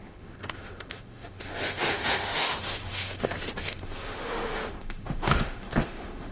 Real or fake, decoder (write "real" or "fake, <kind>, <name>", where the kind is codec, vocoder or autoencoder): fake, autoencoder, DAC-VAE